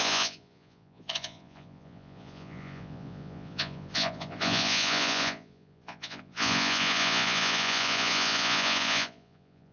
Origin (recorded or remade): remade